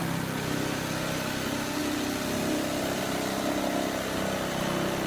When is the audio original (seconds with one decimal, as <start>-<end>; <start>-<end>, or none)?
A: 0.0-1.8; 3.0-5.1